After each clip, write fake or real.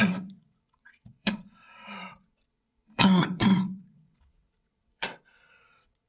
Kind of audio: fake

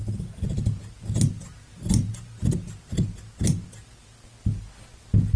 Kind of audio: real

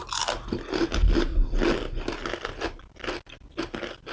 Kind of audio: real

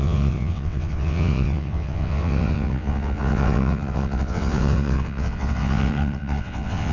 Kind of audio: fake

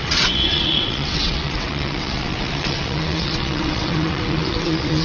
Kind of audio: fake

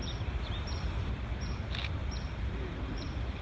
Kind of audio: real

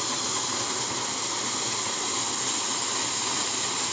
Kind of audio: real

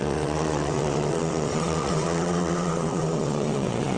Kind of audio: fake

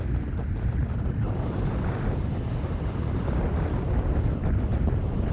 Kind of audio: real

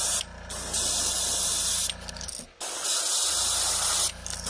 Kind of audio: real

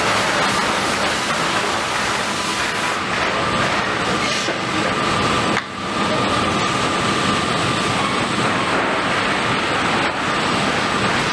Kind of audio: real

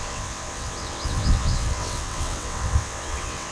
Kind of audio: fake